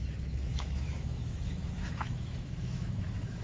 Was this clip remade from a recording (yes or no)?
yes